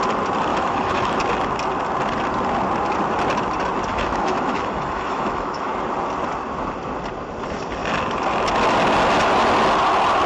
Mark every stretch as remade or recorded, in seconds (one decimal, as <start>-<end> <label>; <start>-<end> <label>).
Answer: 0.0-0.5 recorded; 0.5-1.2 remade; 1.2-3.9 recorded; 3.9-5.7 remade; 5.7-10.3 recorded